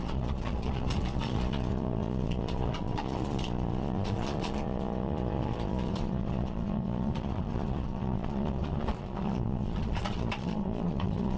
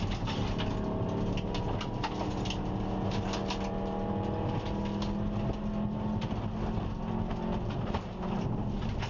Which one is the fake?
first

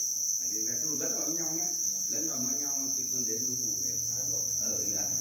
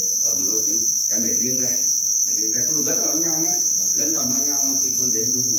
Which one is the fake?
second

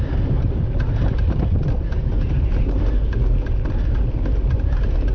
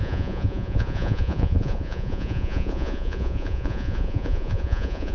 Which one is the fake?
second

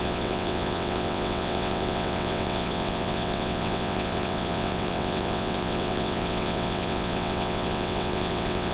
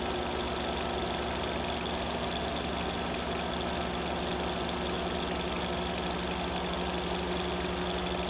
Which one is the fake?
first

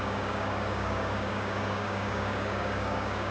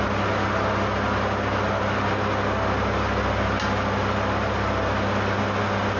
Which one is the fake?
first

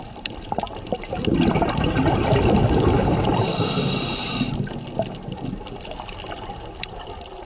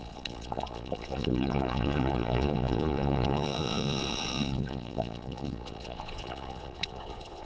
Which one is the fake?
second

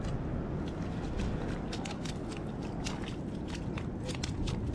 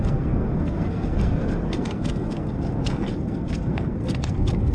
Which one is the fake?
second